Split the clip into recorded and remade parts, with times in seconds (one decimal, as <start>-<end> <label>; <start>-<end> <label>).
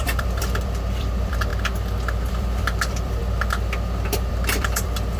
0.0-1.5 remade; 1.5-2.3 recorded; 2.3-3.2 remade; 3.2-4.3 recorded; 4.3-5.2 remade